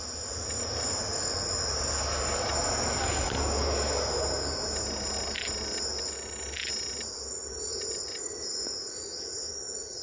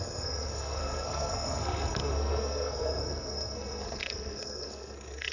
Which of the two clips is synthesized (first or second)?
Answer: second